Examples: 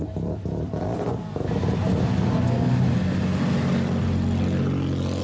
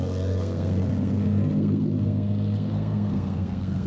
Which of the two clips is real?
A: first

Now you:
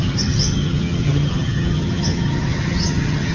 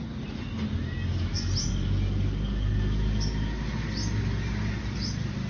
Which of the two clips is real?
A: second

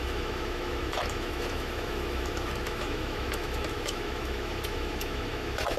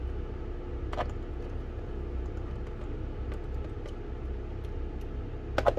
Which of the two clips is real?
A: second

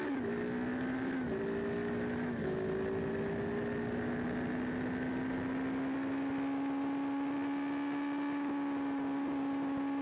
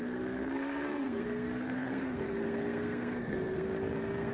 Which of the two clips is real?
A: first